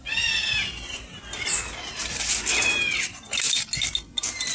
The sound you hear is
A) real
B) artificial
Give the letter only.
A